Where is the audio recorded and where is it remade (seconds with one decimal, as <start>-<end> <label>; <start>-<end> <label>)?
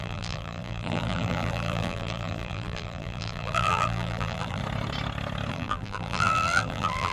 0.0-4.6 remade; 4.6-5.5 recorded; 5.5-7.1 remade